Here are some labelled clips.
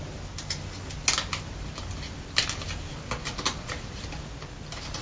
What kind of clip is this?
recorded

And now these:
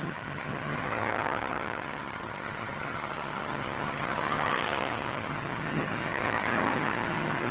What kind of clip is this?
remade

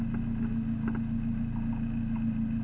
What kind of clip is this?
recorded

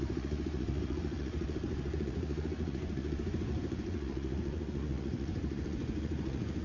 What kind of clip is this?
remade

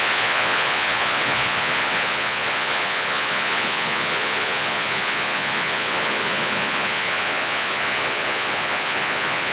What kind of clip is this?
remade